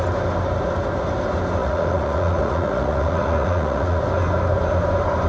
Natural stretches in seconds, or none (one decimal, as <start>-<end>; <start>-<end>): 0.0-1.6; 4.0-5.3